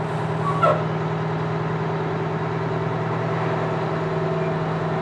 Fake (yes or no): no